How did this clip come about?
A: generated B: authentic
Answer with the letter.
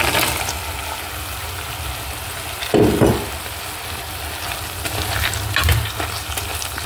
B